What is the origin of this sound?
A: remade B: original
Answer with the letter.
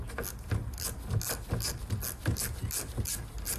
B